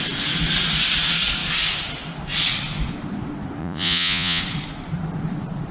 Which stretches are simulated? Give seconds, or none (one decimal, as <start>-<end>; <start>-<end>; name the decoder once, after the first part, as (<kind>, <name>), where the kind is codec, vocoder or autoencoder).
3.6-4.4 (vocoder, Vocos)